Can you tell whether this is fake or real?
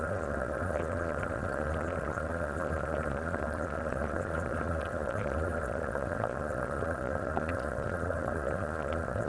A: fake